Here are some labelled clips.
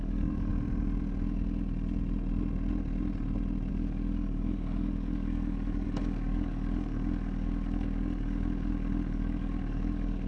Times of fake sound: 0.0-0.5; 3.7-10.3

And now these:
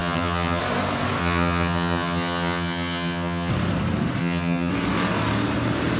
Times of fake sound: 0.0-0.6; 1.2-3.5; 4.2-4.7

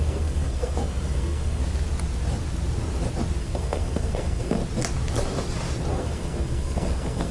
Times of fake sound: 0.0-1.6; 3.4-4.6; 5.9-7.3